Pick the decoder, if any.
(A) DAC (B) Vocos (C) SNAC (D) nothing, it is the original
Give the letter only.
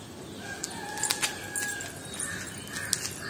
D